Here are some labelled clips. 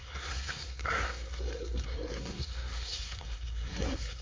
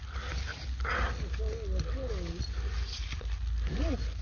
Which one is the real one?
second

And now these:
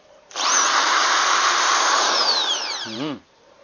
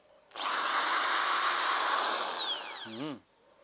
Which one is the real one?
second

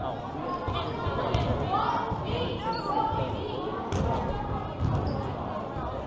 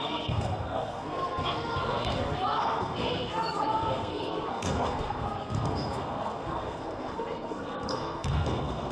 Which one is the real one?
first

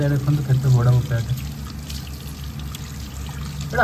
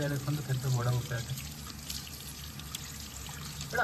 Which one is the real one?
first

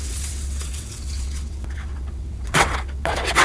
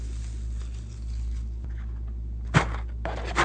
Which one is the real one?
second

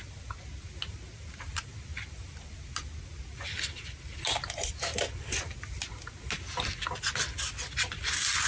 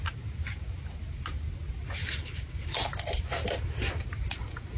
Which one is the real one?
first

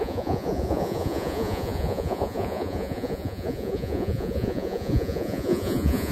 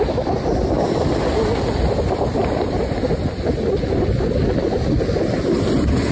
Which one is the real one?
second